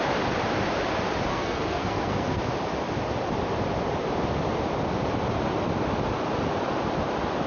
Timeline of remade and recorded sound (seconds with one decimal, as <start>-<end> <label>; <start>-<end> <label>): 0.0-1.3 recorded; 1.3-2.4 remade; 2.4-7.5 recorded